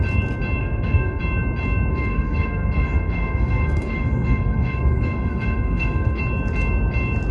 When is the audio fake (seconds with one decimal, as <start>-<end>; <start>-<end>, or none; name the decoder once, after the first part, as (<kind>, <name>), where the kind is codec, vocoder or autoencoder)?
0.6-1.2 (codec, SNAC); 1.9-6.2